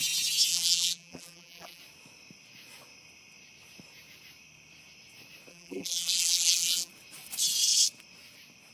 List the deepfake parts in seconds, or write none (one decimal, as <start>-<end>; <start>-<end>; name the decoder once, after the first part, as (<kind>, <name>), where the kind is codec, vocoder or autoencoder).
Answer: 0.5-1.8 (vocoder, BigVGAN v2); 5.5-6.9

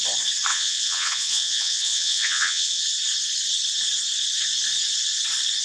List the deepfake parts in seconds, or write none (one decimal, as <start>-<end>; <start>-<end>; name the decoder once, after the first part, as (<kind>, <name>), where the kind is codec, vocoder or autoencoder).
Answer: 0.5-2.8 (vocoder, WaveNeXt)

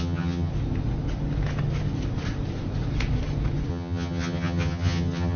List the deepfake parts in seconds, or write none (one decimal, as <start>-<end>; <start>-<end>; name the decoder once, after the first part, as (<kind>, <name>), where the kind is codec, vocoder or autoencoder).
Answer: 0.0-0.5 (vocoder, HiFi-GAN); 3.7-5.4